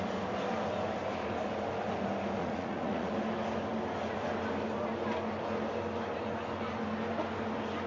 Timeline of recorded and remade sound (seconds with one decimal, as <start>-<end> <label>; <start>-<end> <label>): 0.0-2.4 recorded; 2.4-3.1 remade; 3.1-7.9 recorded